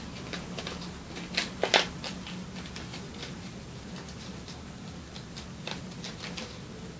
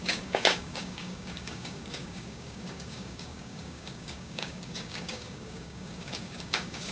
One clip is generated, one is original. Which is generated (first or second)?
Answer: second